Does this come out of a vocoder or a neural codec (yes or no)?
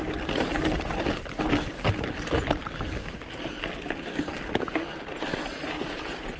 no